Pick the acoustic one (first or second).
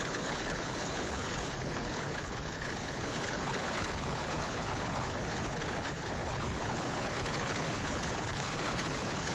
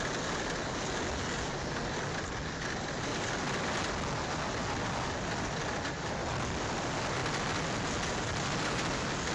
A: second